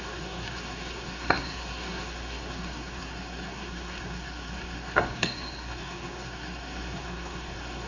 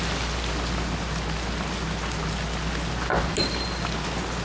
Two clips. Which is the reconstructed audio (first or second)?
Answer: first